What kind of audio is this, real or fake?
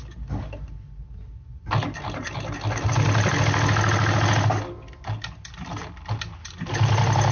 real